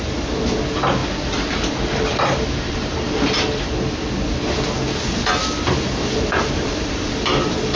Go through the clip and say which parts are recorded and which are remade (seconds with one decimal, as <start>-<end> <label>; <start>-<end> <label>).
0.0-5.4 recorded; 5.4-7.8 remade